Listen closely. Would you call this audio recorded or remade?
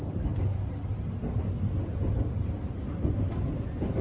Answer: recorded